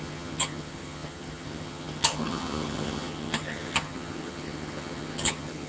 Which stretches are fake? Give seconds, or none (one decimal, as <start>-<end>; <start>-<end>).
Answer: 0.0-5.7